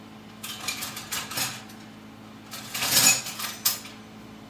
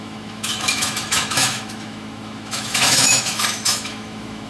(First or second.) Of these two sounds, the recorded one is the first